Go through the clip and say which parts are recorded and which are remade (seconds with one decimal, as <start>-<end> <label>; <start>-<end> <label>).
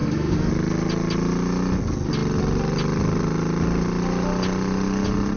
0.0-0.5 remade; 0.5-5.4 recorded